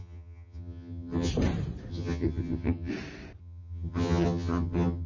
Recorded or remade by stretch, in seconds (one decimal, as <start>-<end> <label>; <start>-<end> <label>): 0.0-1.3 remade; 1.3-1.9 recorded; 1.9-2.9 remade; 2.9-3.4 recorded; 3.4-5.1 remade

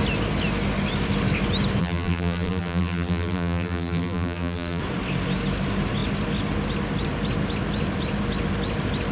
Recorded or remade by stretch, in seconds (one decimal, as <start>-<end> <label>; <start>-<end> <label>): 0.0-1.8 recorded; 1.8-4.8 remade; 4.8-9.1 recorded

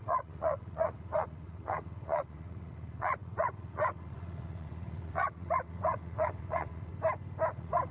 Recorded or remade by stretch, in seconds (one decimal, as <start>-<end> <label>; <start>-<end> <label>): 0.0-6.9 remade; 6.9-7.5 recorded; 7.5-7.9 remade

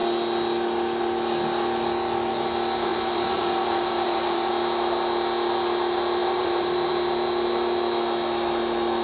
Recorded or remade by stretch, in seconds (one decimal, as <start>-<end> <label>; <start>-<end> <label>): 0.0-2.9 recorded; 2.9-4.5 remade; 4.5-6.2 recorded; 6.2-6.9 remade; 6.9-9.0 recorded